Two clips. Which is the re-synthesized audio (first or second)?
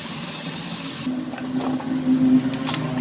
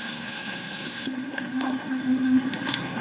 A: second